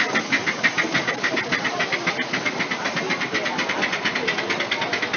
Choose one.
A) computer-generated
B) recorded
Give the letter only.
B